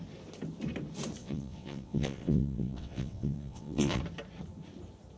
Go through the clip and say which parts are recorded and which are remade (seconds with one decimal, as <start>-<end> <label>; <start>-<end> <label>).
0.0-1.2 recorded; 1.2-4.0 remade; 4.0-5.2 recorded